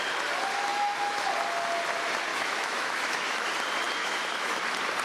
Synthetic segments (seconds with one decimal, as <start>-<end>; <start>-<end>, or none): 0.7-1.3; 2.3-3.5; 4.0-4.6